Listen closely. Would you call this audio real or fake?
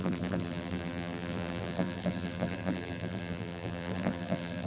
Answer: fake